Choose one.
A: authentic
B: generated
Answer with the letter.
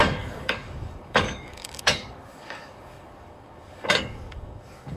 B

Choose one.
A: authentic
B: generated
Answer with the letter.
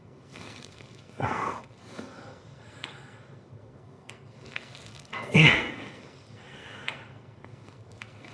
B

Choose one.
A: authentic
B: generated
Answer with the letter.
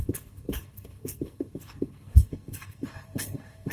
B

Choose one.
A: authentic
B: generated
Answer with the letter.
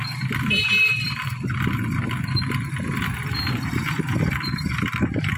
A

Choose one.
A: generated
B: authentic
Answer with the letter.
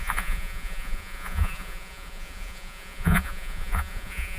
A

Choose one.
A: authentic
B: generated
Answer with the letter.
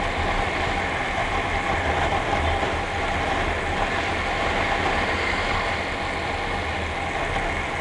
A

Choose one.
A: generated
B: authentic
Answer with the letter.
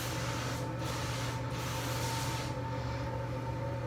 B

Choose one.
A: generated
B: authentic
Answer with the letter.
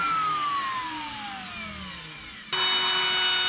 B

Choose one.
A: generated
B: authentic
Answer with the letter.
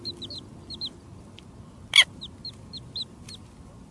B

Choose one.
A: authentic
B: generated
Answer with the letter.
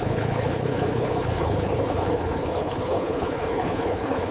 B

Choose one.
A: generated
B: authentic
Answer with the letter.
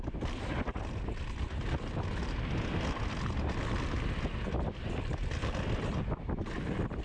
B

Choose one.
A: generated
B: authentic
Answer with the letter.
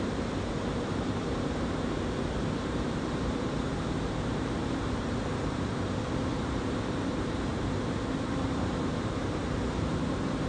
A